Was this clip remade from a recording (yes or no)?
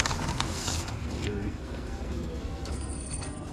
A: yes